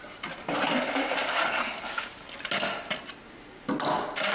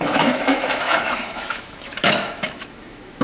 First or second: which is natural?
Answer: first